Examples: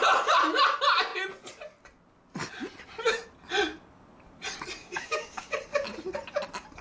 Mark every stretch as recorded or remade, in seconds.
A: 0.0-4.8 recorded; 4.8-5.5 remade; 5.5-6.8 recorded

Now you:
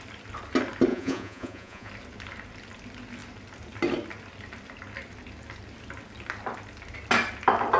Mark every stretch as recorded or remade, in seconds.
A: 0.0-0.9 recorded; 0.9-1.9 remade; 1.9-7.8 recorded